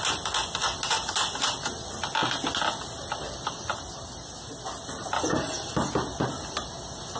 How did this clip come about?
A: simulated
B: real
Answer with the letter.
B